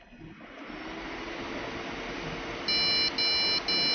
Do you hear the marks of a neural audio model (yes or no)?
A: no